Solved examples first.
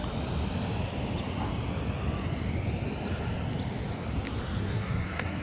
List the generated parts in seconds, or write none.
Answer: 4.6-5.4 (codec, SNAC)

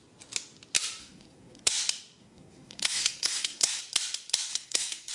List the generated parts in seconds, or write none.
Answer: 1.0-1.7 (codec, SNAC); 2.2-3.8; 4.5-5.1

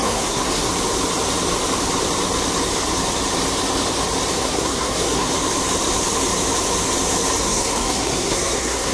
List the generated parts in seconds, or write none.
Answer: 0.0-0.7 (codec, SNAC); 4.3-5.3; 7.4-8.9

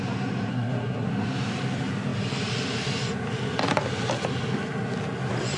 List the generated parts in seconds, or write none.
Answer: 0.5-1.1 (codec, SNAC)

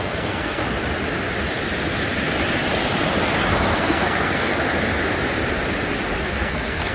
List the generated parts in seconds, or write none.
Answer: 0.0-0.6 (codec, SNAC); 3.7-4.5; 6.2-6.9

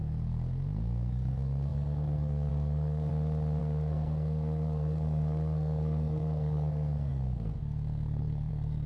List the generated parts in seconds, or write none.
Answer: 0.0-3.1 (codec, SNAC); 3.6-8.9